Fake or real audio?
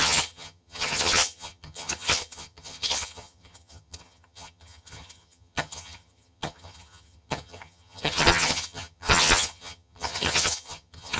fake